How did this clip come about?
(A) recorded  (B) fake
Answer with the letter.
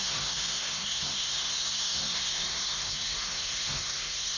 B